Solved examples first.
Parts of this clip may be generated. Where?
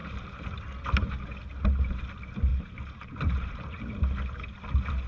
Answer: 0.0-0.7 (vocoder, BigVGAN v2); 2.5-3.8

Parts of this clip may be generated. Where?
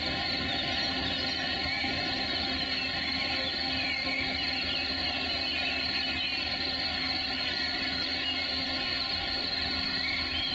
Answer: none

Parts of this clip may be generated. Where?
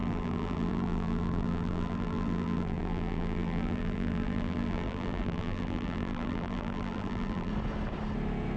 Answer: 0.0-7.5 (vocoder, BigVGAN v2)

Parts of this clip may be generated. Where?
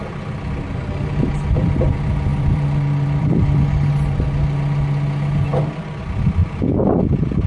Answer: 2.3-3.3 (vocoder, BigVGAN v2); 5.5-6.0; 6.4-7.5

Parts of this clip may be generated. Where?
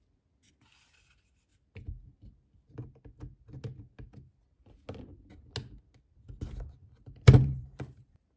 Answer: 6.8-8.4 (vocoder, BigVGAN v2)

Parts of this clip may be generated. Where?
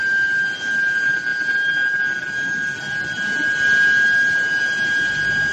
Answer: none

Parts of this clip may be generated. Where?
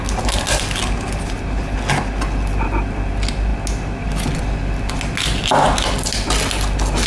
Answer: none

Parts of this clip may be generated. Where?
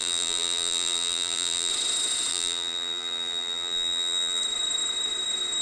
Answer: 0.0-1.7 (vocoder, BigVGAN v2); 2.3-4.4